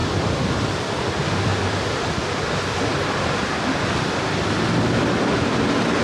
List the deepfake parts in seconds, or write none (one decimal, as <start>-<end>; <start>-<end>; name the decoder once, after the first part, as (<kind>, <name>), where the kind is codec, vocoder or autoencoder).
0.0-1.1 (vocoder, BigVGAN v2); 1.5-2.2; 2.9-5.0